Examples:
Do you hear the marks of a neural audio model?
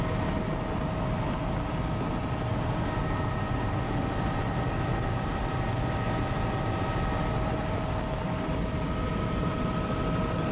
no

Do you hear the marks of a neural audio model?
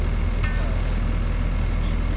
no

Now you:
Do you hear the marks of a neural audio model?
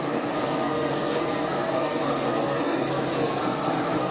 yes